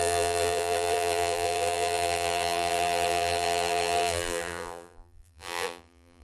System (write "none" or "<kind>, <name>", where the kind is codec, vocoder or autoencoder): vocoder, BigVGAN v2